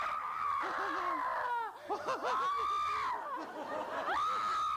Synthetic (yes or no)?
no